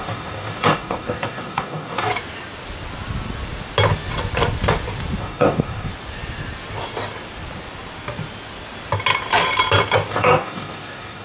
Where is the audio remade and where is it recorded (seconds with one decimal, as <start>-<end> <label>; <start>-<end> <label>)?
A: 0.0-2.1 remade; 2.1-5.2 recorded; 5.2-5.9 remade; 5.9-10.1 recorded; 10.1-11.2 remade